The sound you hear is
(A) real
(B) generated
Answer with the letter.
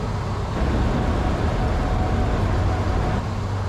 A